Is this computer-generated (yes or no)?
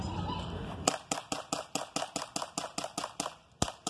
no